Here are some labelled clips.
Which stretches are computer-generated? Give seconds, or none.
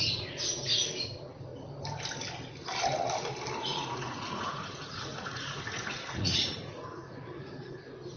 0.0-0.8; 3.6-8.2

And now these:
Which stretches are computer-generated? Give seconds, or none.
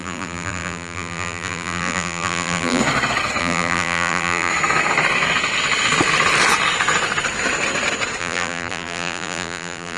0.0-2.8; 3.4-4.5; 8.2-10.0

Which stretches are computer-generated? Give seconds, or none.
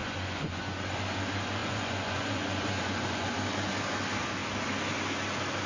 0.0-1.0; 1.6-3.3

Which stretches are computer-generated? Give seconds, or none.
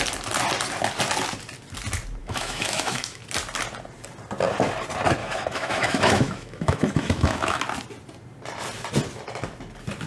2.2-3.2; 5.2-7.6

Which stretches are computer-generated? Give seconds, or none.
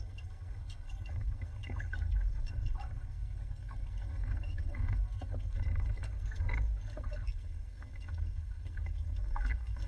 0.0-9.9